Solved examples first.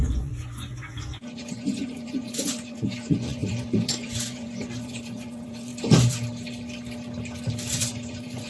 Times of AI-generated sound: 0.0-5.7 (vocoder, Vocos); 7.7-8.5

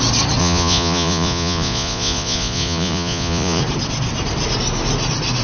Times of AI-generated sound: 0.4-3.6 (vocoder, Vocos)

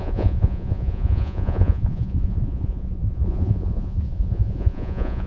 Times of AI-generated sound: 0.0-5.3 (vocoder, Vocos)

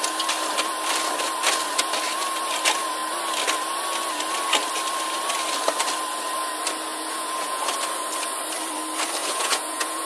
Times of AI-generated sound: 6.9-7.6 (vocoder, Vocos); 9.2-10.1

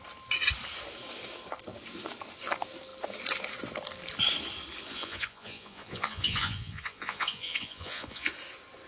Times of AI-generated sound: 4.9-8.3 (vocoder, Vocos)